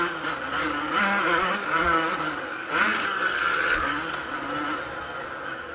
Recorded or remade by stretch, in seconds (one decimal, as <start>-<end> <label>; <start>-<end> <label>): 0.0-0.6 recorded; 0.6-2.7 remade; 2.7-5.7 recorded